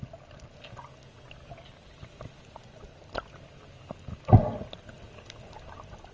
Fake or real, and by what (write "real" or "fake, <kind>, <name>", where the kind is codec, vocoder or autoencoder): real